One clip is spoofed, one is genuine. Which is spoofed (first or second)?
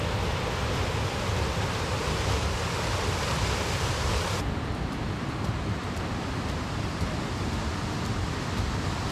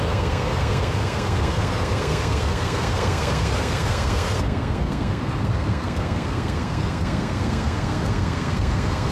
second